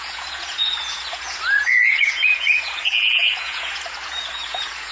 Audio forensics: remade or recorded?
remade